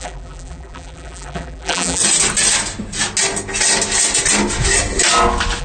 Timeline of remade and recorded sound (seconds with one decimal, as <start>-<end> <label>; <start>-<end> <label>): 0.0-2.0 remade; 2.0-5.6 recorded